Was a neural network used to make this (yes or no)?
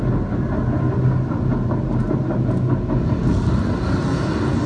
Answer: no